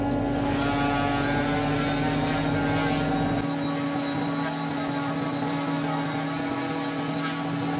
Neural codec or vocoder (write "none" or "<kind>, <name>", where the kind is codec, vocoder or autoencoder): none